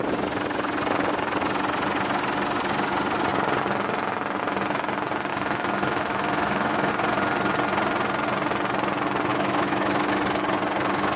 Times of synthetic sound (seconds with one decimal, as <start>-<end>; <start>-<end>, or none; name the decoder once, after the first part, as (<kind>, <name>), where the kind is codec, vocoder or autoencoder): 5.3-6.9 (autoencoder, DAC-VAE); 9.3-10.1